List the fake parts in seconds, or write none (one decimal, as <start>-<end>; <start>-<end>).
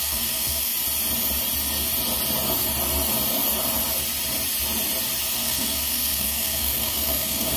0.0-0.7; 5.3-7.6